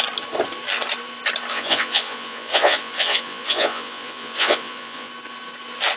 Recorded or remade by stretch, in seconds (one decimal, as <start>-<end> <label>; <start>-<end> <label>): 0.0-1.5 recorded; 1.5-5.1 remade; 5.1-6.0 recorded